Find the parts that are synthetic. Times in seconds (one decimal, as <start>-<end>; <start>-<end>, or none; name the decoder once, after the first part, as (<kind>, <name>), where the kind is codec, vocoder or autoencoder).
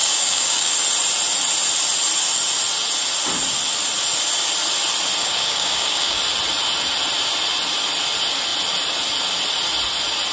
0.0-0.7 (codec, DAC); 5.2-6.2